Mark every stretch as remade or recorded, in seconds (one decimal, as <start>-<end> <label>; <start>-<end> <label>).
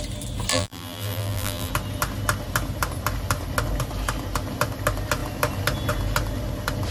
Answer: 0.0-0.5 recorded; 0.5-1.7 remade; 1.7-6.9 recorded